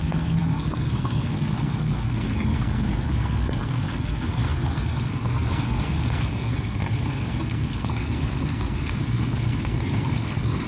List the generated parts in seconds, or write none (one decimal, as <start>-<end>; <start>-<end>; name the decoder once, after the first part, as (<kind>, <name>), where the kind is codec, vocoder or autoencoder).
0.0-10.7 (codec, SNAC)

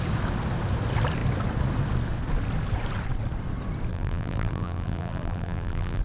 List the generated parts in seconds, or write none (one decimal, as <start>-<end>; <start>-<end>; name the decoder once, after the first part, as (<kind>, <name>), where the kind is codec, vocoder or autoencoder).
3.9-6.0 (vocoder, BigVGAN v2)